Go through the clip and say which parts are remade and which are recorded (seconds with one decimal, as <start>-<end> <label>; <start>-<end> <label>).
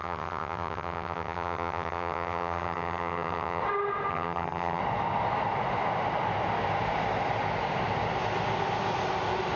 0.0-3.6 remade; 3.6-4.1 recorded; 4.1-4.8 remade; 4.8-9.6 recorded